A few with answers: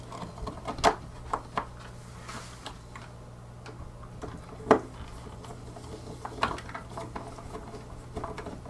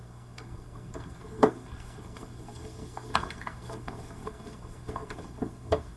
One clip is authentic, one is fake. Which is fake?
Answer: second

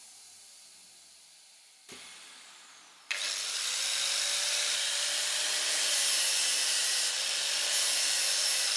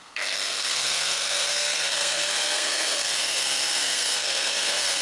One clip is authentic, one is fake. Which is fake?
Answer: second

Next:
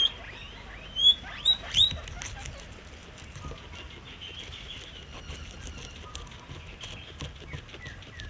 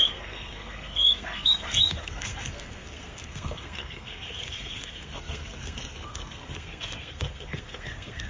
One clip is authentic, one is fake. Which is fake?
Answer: second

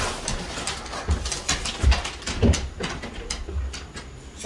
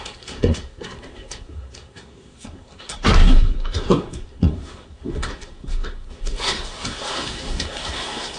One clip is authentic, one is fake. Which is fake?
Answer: second